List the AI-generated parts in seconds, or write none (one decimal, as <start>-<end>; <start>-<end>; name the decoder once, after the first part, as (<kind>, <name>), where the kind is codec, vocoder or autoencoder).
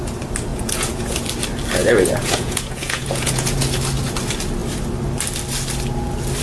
0.5-1.1 (vocoder, Vocos); 1.8-3.6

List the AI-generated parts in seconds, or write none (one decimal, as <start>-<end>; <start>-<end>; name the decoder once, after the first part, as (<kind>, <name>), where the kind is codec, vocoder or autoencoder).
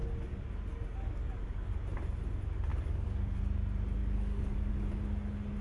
0.7-1.8 (codec, DAC); 2.7-3.4; 4.0-4.7